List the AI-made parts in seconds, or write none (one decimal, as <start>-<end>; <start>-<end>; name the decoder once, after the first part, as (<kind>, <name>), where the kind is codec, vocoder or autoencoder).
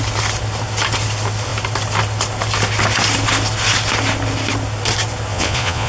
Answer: 5.3-5.9 (vocoder, Vocos)